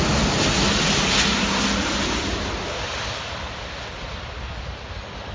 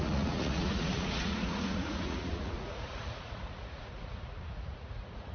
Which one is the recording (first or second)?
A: first